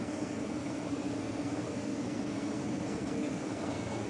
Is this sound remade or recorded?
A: remade